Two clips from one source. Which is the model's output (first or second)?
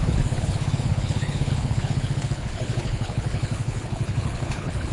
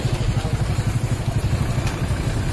first